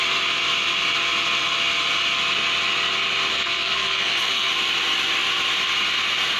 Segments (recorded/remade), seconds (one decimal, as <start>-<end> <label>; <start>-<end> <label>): 0.0-3.3 recorded; 3.3-4.5 remade; 4.5-6.4 recorded